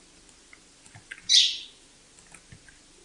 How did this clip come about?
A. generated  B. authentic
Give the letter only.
B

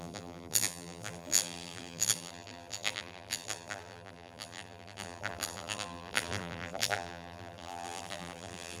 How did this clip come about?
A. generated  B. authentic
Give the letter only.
A